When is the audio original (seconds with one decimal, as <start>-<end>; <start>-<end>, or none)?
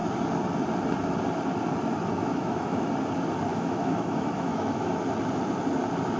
0.0-2.3; 2.9-3.5; 5.0-6.2